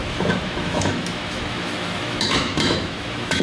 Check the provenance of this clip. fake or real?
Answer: fake